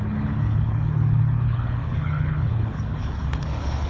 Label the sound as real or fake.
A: fake